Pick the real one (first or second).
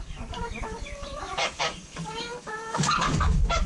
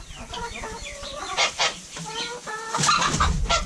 second